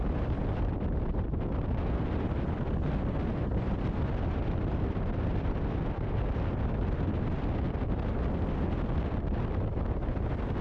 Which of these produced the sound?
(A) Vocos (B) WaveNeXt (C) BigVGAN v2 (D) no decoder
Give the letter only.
D